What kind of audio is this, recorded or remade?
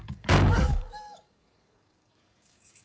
remade